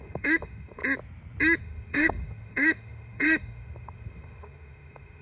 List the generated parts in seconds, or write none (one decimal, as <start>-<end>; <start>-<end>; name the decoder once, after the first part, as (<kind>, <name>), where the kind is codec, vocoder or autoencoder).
0.0-0.8 (autoencoder, DAC-VAE); 1.6-5.2